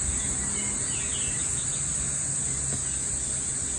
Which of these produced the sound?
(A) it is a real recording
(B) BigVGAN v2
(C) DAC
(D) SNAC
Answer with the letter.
A